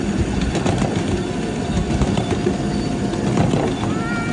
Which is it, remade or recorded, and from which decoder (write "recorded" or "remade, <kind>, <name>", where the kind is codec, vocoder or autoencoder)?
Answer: recorded